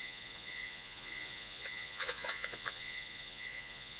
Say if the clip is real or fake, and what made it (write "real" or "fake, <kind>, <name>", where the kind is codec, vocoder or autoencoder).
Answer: fake, vocoder, Vocos